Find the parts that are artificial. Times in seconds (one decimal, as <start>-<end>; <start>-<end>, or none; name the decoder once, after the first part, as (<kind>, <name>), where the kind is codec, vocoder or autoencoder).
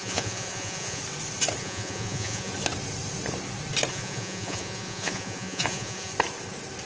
0.0-1.0 (vocoder, Vocos); 1.6-2.5; 3.9-6.1